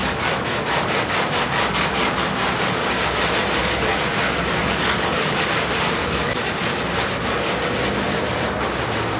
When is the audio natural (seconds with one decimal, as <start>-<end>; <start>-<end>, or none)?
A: 2.9-3.6; 5.6-6.0; 6.6-9.2